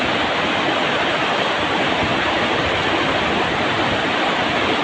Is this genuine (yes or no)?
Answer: yes